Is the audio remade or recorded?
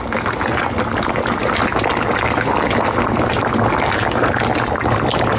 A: recorded